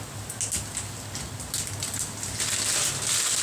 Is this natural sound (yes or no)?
yes